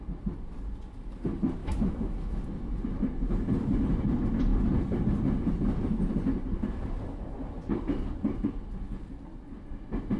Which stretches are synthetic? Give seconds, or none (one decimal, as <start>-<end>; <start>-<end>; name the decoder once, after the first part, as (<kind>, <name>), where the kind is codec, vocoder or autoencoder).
1.6-2.4 (autoencoder, DAC-VAE)